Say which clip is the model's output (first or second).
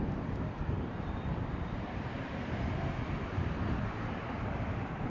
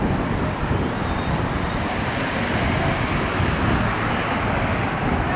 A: first